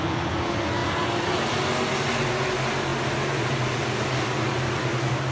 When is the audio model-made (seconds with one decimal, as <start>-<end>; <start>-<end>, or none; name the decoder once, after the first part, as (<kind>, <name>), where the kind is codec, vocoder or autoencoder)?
none